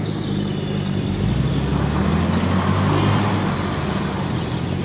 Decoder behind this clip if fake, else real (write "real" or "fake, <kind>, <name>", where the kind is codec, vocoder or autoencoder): real